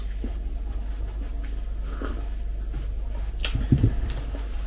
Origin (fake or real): real